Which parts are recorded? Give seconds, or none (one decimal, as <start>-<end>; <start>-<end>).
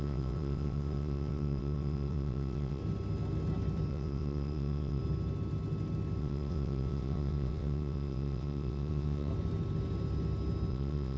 2.8-3.9; 5.0-6.2; 9.3-10.7